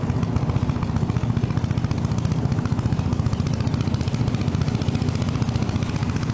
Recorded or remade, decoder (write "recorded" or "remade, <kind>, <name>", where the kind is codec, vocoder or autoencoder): recorded